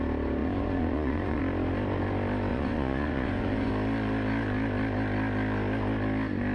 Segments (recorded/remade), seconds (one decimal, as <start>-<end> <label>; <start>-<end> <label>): 0.0-0.4 recorded; 0.4-1.4 remade; 1.4-2.5 recorded; 2.5-3.7 remade; 3.7-6.5 recorded